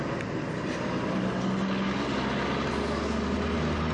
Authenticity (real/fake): real